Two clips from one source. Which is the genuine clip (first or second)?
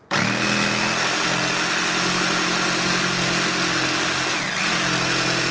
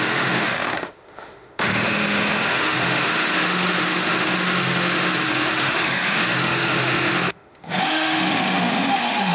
first